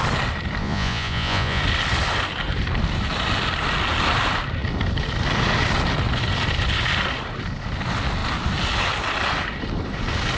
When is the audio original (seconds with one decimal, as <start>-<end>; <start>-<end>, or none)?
0.0-0.6; 1.6-10.4